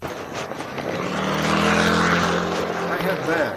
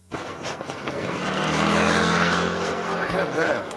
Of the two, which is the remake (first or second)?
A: second